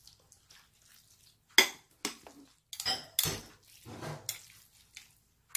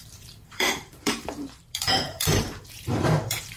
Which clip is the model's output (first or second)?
second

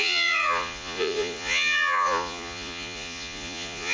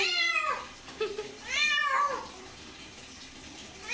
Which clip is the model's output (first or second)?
first